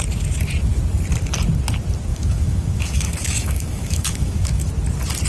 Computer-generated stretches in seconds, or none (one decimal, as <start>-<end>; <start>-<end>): 2.1-4.7